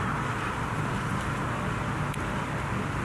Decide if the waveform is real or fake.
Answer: real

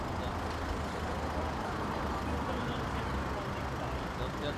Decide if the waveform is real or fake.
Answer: real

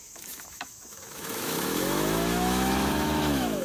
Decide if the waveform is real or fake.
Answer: fake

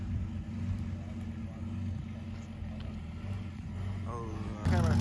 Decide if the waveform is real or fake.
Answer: real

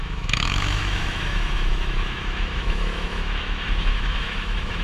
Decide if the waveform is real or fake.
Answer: fake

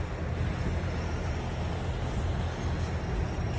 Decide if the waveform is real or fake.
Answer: real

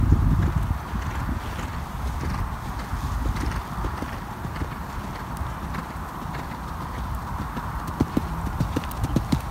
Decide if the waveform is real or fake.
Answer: real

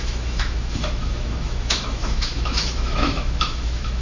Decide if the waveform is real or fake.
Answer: fake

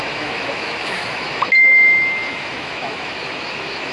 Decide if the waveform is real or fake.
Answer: fake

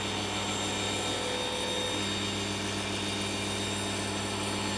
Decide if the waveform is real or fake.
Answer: real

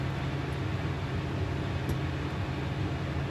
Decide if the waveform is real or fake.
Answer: real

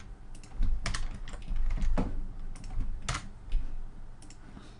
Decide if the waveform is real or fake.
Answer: real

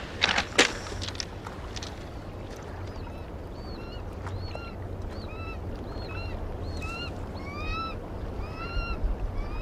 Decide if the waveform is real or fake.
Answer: real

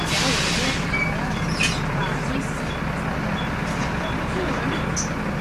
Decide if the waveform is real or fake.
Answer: real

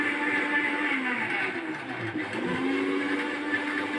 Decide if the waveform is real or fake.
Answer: real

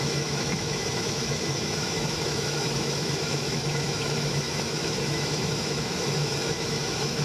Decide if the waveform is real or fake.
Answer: fake